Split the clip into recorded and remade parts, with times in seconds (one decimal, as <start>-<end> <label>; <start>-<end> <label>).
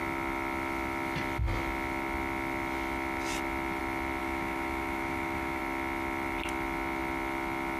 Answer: 0.0-4.2 recorded; 4.2-5.6 remade; 5.6-7.8 recorded